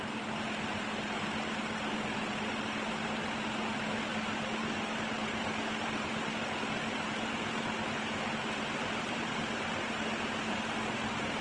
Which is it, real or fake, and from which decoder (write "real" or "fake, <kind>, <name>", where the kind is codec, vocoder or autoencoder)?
real